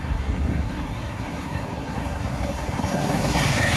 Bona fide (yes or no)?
no